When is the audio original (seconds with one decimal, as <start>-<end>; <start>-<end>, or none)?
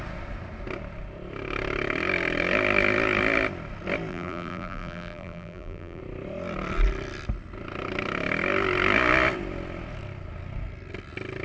0.0-4.1; 6.0-11.4